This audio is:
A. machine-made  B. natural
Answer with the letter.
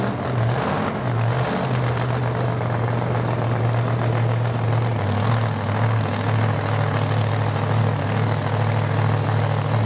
B